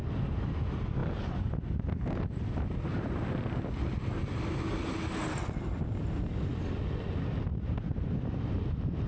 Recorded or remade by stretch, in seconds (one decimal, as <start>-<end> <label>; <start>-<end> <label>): 0.0-9.1 recorded